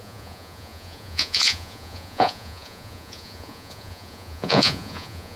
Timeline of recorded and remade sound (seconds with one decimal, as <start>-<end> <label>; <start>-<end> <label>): 0.0-5.4 remade